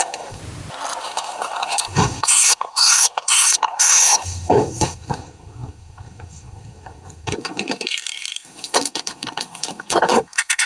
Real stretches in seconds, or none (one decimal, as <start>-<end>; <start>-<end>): 0.4-1.0